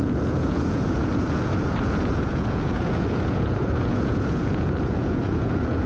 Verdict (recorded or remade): remade